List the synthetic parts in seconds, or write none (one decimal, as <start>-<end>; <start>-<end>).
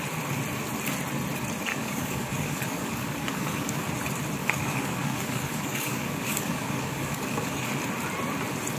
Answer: 1.7-3.9; 4.4-7.7